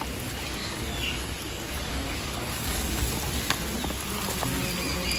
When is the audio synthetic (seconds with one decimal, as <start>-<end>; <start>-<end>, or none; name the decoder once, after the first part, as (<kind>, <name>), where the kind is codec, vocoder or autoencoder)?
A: 0.6-3.1 (codec, DAC)